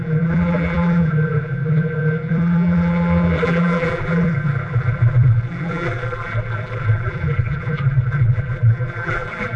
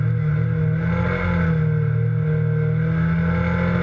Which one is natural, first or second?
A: second